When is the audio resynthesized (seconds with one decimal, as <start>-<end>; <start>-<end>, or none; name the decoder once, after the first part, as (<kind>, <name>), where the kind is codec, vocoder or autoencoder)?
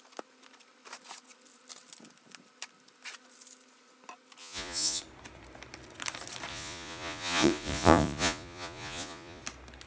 4.4-5.0 (vocoder, Vocos); 6.5-9.4